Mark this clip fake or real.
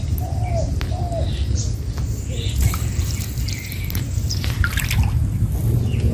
real